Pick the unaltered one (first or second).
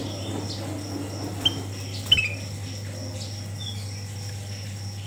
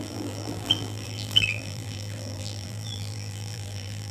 first